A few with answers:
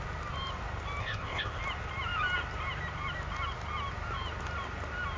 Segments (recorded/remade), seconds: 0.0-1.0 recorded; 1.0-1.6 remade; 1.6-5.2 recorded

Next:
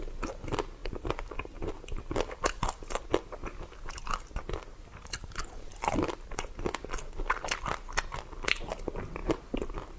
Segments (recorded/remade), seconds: 0.0-10.0 recorded

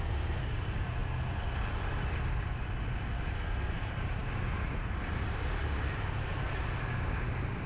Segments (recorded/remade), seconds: 0.0-1.0 remade; 1.0-3.7 recorded; 3.7-6.3 remade; 6.3-7.1 recorded; 7.1-7.7 remade

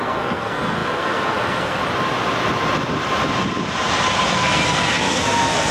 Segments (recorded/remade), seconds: 0.0-1.8 remade; 1.8-4.3 recorded; 4.3-5.7 remade

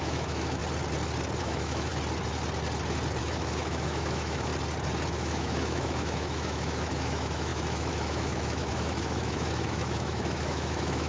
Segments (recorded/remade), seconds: 0.0-0.6 remade; 0.6-1.4 recorded; 1.4-1.9 remade; 1.9-3.2 recorded; 3.2-4.5 remade; 4.5-5.1 recorded; 5.1-11.1 remade

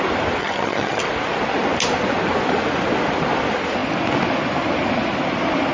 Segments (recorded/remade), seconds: 0.0-0.4 recorded; 0.4-1.0 remade; 1.0-5.7 recorded

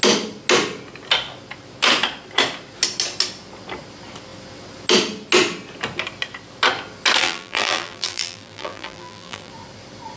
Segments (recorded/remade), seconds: 0.0-7.2 recorded; 7.2-9.5 remade; 9.5-10.2 recorded